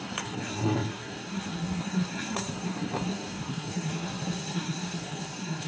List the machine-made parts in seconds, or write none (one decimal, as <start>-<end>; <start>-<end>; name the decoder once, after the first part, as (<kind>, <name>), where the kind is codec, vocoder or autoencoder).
0.0-5.7 (codec, SNAC)